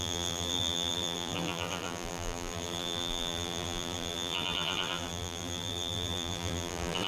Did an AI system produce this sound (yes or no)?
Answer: yes